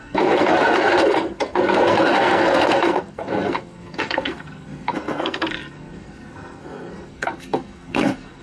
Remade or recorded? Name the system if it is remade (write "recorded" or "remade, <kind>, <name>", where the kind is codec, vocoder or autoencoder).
remade, codec, SNAC